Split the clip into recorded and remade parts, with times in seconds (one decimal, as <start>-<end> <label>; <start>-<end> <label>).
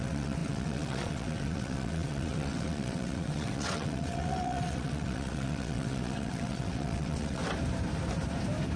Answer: 0.0-7.4 remade; 7.4-8.8 recorded